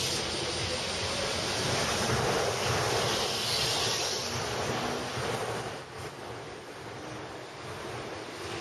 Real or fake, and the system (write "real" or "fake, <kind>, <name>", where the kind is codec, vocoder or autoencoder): real